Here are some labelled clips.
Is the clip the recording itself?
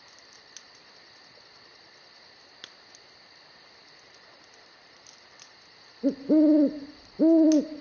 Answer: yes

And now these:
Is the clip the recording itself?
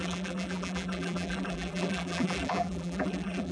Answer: no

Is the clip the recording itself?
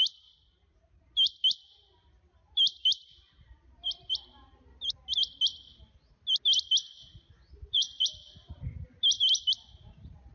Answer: yes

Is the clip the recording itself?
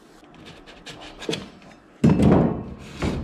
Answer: yes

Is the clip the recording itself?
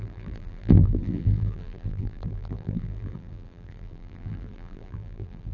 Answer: no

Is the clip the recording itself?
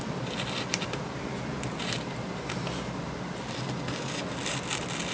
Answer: no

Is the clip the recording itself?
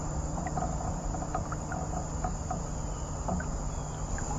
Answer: yes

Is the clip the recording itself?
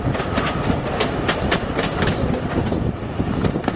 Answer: yes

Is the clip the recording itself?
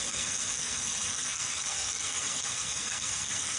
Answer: no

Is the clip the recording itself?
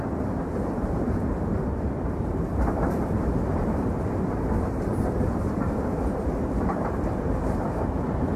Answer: no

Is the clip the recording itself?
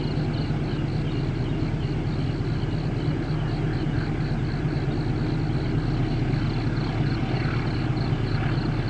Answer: yes